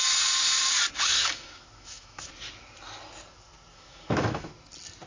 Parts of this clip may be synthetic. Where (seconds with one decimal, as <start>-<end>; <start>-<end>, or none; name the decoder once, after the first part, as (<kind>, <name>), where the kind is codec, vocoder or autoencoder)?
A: 1.1-2.3 (autoencoder, DAC-VAE); 3.7-4.5